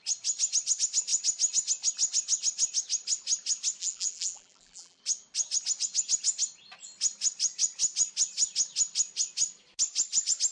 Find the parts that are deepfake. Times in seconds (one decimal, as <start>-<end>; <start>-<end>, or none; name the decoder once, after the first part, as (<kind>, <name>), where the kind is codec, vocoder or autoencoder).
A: 3.8-5.0 (vocoder, BigVGAN v2)